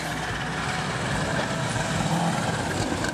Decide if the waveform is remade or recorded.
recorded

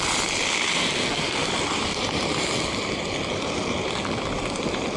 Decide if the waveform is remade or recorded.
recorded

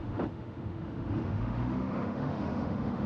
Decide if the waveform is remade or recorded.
remade